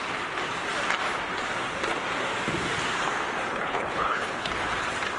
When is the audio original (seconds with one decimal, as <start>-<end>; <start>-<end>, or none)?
0.0-3.5; 4.5-5.2